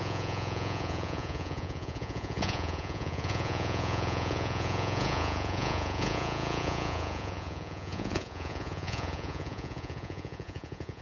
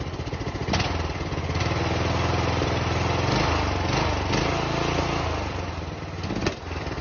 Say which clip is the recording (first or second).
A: second